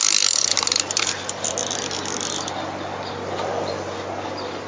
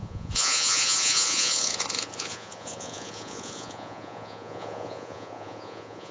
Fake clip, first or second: second